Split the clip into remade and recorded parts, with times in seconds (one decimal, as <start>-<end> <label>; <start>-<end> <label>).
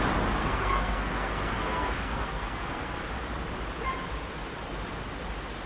0.0-0.4 recorded; 0.4-3.0 remade; 3.0-5.7 recorded